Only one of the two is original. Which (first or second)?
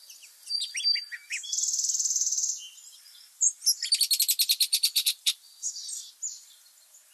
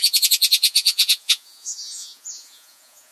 first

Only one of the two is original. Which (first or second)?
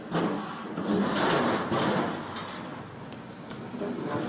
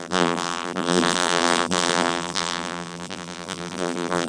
first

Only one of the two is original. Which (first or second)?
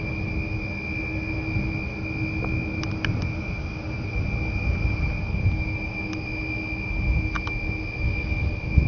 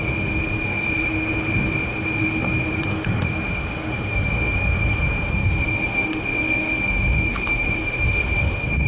first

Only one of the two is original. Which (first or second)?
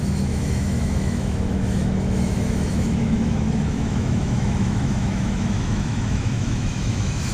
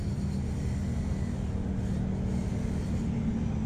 second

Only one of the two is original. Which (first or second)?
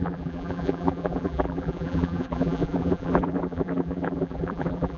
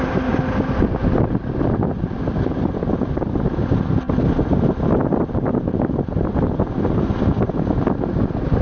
second